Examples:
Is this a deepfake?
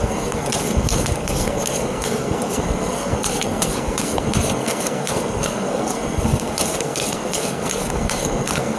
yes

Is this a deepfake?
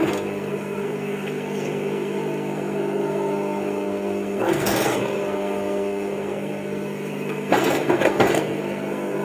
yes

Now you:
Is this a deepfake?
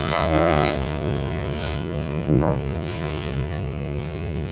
yes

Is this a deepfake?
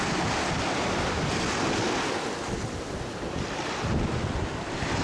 no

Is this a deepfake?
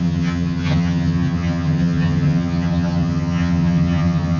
yes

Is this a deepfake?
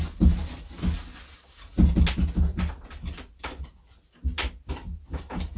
no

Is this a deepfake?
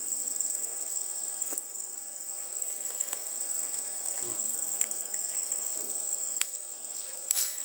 yes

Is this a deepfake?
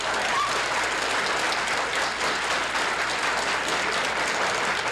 no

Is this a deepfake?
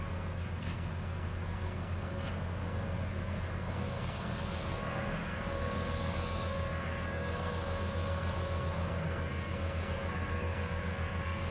yes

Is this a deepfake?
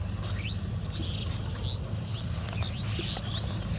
no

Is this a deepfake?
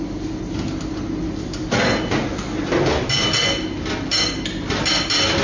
no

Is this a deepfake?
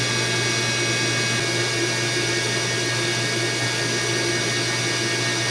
no